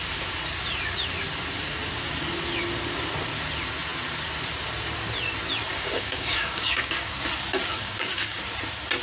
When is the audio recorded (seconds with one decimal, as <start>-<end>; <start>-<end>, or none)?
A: 0.0-5.7; 7.1-7.7; 8.4-9.0